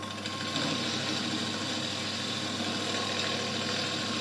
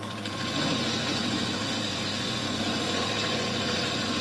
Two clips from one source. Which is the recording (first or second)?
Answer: first